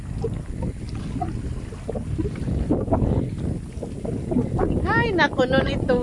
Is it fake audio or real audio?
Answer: real